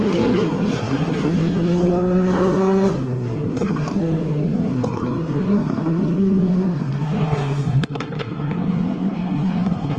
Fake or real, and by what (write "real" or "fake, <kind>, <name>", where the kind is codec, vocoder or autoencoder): fake, codec, SNAC